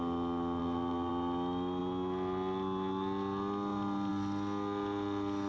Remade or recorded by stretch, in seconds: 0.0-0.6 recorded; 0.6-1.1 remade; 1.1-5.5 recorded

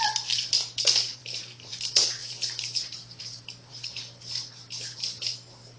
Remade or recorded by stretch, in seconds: 0.0-5.8 recorded

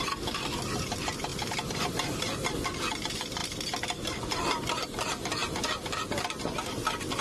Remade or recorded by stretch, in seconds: 0.0-3.4 recorded; 3.4-4.4 remade; 4.4-7.2 recorded

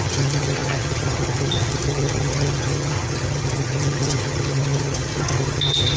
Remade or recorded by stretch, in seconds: 0.0-6.0 remade

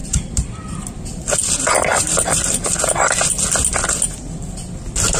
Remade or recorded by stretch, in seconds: 0.0-0.9 remade; 0.9-1.9 recorded; 1.9-2.5 remade; 2.5-5.2 recorded

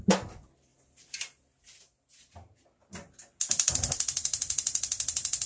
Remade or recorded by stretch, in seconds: 0.0-5.5 recorded

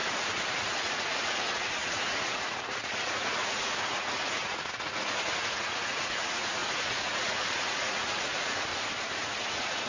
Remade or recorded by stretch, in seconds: 0.0-0.5 recorded; 0.5-8.7 remade; 8.7-9.2 recorded; 9.2-9.9 remade

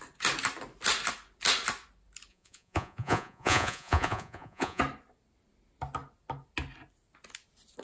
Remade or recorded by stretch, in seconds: 0.0-2.3 recorded; 2.3-4.8 remade; 4.8-7.8 recorded